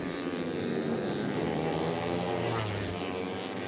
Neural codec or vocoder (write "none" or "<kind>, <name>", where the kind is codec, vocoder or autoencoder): none